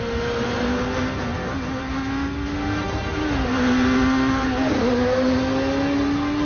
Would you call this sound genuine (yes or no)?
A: yes